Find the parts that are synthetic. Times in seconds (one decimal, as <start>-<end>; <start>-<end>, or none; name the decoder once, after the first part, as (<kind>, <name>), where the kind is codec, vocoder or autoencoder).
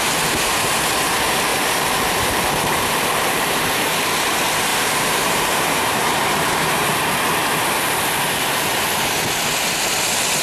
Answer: 1.5-3.6 (vocoder, BigVGAN v2); 4.7-7.0